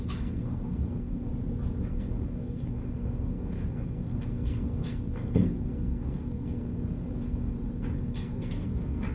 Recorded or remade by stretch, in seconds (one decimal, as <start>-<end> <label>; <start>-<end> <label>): 0.0-1.3 remade; 1.3-1.9 recorded; 1.9-9.1 remade

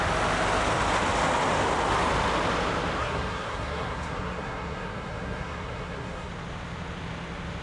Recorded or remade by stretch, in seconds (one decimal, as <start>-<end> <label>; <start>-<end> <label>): 0.0-3.0 recorded; 3.0-6.3 remade; 6.3-7.6 recorded

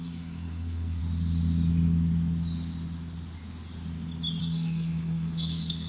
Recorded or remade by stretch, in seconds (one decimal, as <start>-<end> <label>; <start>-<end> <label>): 0.0-1.0 remade; 1.0-4.4 recorded; 4.4-5.9 remade

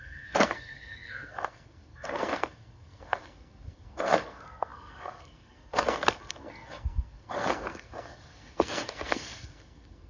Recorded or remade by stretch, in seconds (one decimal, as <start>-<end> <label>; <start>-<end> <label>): 0.0-10.1 remade

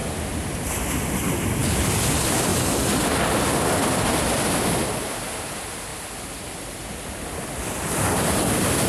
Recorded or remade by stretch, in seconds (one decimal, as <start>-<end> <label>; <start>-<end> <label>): 0.0-8.9 recorded

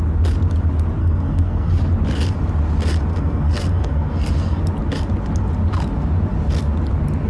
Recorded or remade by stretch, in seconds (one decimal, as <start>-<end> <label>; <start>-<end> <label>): 0.0-1.0 recorded; 1.0-1.8 remade; 1.8-3.1 recorded; 3.1-4.6 remade; 4.6-7.3 recorded

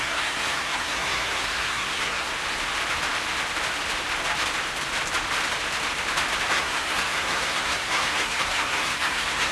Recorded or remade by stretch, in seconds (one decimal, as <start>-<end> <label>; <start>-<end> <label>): 0.0-2.3 remade; 2.3-6.5 recorded; 6.5-9.5 remade